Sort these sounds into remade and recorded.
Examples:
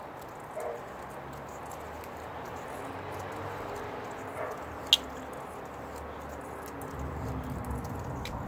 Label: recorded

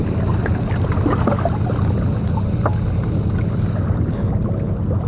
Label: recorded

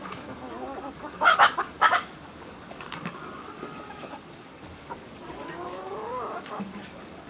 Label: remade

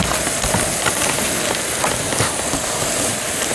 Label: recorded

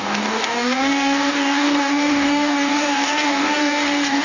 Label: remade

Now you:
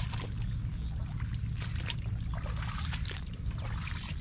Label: recorded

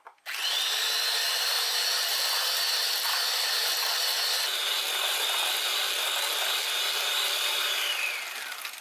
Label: recorded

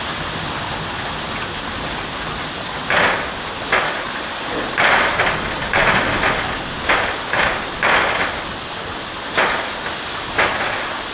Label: recorded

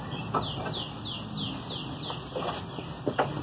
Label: recorded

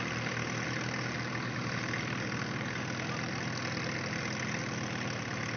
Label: recorded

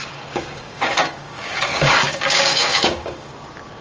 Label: remade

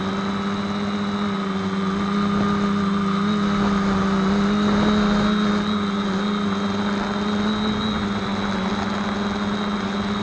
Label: recorded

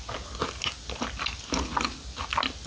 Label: recorded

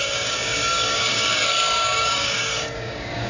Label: remade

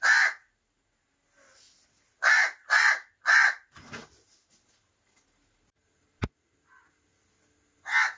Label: recorded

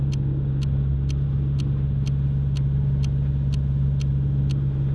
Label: recorded